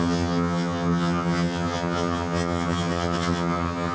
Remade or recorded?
remade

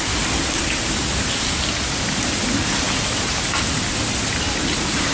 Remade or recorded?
recorded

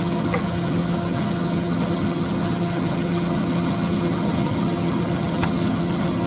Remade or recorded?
remade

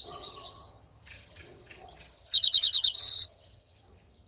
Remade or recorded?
remade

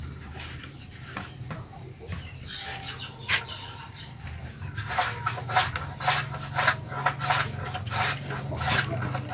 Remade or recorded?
recorded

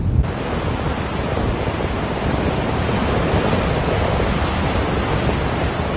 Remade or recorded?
recorded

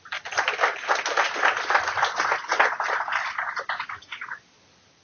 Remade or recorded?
recorded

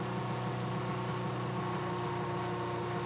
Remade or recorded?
recorded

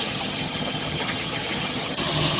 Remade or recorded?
remade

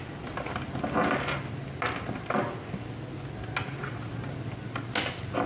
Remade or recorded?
recorded